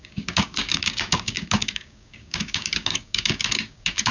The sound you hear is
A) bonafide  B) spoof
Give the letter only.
B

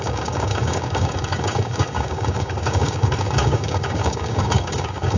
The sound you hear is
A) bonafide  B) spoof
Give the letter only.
B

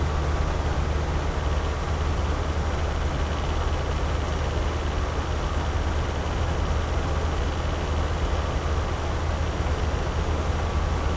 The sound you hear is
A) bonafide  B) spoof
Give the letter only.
A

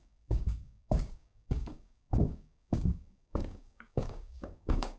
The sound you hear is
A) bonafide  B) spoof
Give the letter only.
B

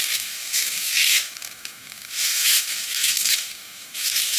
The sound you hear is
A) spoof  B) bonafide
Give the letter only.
A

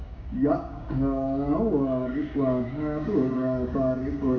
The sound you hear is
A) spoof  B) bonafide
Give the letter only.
A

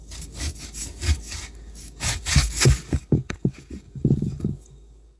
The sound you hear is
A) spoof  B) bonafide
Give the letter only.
A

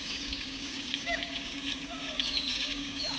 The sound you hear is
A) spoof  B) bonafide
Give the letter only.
A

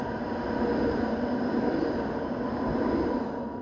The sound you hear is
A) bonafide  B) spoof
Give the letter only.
A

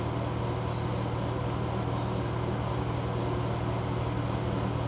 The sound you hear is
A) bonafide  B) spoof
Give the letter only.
A